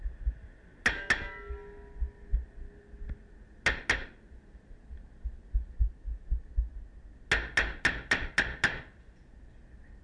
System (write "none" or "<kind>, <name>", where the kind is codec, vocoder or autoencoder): none